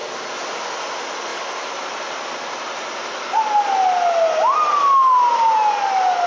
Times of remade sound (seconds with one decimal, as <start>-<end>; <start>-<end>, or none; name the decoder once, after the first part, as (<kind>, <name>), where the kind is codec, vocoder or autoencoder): none